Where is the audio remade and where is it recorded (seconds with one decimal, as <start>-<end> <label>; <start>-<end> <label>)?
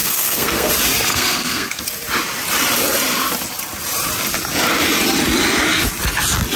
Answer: 0.0-0.7 remade; 0.7-1.1 recorded; 1.1-1.8 remade; 1.8-6.6 recorded